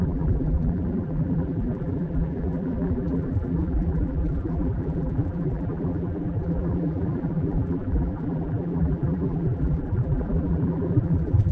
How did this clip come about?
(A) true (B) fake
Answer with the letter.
B